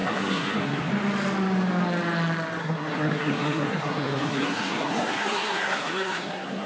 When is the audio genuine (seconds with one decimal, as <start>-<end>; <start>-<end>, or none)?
0.9-2.6